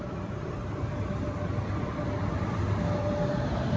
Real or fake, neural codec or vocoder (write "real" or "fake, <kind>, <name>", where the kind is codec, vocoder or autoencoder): real